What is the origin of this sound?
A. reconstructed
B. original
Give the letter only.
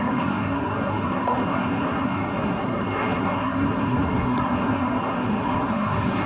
A